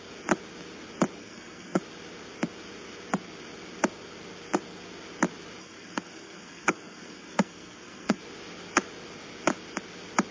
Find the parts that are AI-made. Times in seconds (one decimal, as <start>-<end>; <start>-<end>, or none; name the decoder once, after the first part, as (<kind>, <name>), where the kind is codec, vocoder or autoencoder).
1.2-1.8 (codec, SNAC); 5.6-8.2